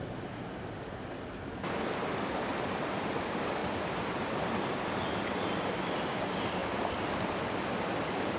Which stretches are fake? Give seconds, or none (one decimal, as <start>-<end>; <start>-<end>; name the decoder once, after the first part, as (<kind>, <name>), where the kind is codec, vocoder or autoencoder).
none